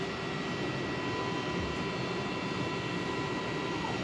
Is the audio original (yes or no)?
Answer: yes